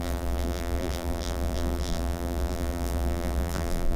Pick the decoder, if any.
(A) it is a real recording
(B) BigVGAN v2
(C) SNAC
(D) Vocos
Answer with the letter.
B